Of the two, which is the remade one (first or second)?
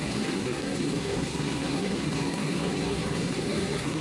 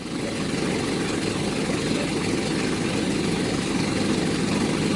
first